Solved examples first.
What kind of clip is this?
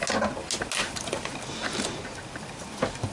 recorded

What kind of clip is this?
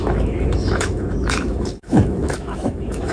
remade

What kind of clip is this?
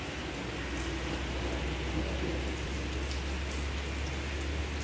recorded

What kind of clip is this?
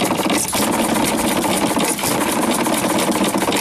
recorded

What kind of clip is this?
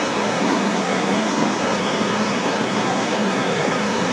remade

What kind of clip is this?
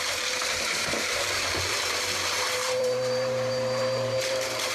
remade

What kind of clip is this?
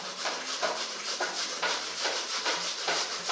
remade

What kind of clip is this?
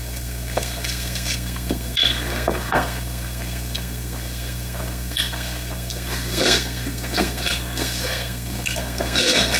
remade